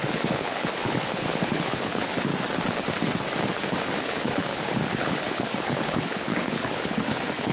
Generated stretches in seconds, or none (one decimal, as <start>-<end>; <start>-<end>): 0.0-2.3; 3.9-7.5